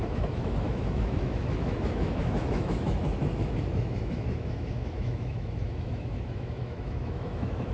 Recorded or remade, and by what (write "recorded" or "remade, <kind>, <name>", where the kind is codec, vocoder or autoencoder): remade, autoencoder, DAC-VAE